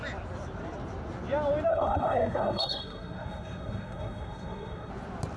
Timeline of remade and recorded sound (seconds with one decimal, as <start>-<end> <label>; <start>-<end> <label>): 0.0-1.7 recorded; 1.7-4.9 remade; 4.9-5.4 recorded